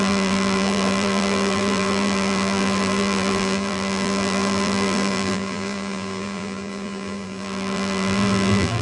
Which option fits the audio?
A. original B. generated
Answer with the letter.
B